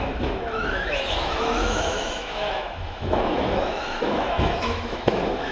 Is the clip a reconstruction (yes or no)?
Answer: yes